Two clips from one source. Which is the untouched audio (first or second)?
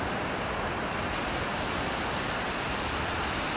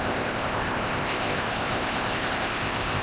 first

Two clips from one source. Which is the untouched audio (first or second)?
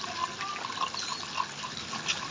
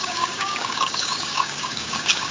first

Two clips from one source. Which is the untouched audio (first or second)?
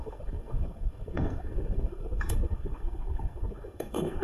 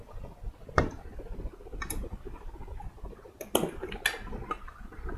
second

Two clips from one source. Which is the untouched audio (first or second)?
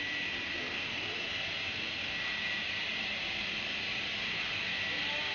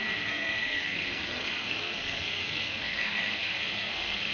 first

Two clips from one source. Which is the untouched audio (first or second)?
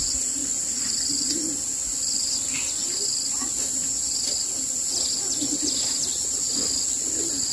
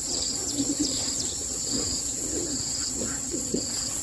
first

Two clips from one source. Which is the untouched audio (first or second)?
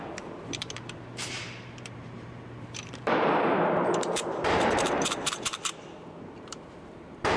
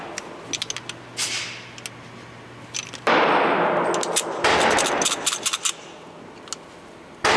second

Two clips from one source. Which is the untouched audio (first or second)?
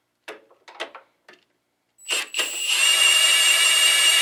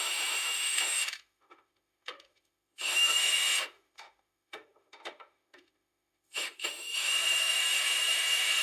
first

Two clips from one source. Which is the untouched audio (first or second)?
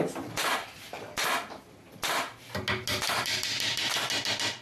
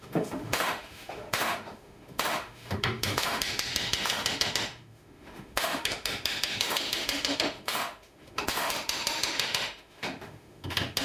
first